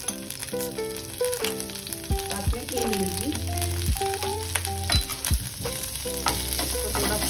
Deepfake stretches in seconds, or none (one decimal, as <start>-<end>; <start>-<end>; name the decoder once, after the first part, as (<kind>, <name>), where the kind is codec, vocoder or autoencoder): 2.8-3.4 (vocoder, BigVGAN v2); 5.1-6.1